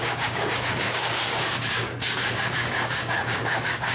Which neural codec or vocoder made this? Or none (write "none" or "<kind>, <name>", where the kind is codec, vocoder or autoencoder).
codec, DAC